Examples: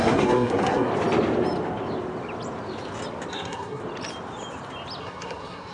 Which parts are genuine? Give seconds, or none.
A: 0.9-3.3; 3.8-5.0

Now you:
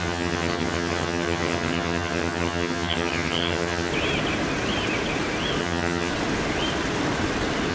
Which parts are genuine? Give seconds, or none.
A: 3.9-5.6; 6.1-7.7

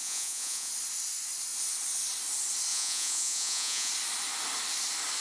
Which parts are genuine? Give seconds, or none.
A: 0.7-2.7; 3.9-5.2

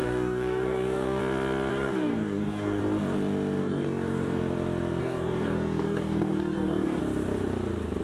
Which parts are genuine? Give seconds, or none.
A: 1.2-1.7; 2.8-3.6; 4.4-5.0; 7.0-8.0

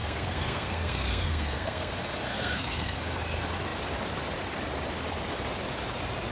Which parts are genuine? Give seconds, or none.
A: 1.9-2.3; 3.0-6.3

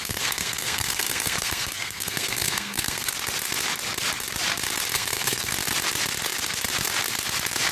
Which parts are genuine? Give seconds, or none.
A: 3.1-4.9; 5.5-7.7

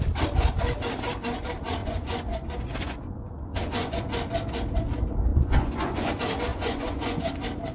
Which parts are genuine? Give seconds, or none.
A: 0.0-1.8; 4.0-5.3; 6.1-6.5; 7.3-7.7